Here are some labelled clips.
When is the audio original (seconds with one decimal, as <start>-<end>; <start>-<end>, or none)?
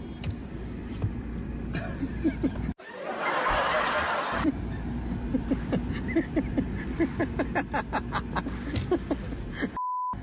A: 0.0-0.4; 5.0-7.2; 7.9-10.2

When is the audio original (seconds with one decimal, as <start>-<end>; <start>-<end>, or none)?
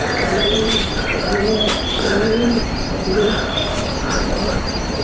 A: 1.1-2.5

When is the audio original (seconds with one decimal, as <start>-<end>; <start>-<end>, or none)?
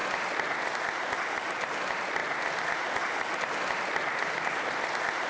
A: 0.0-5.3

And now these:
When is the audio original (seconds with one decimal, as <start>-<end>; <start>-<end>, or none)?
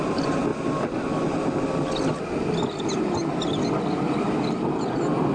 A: 0.0-5.3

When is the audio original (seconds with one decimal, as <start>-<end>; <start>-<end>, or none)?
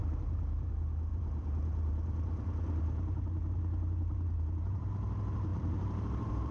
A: 0.7-1.1; 4.9-5.5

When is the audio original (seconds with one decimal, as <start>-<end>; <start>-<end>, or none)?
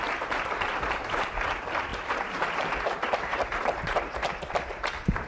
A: 0.0-1.0; 1.5-1.9